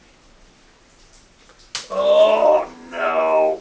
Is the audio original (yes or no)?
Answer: yes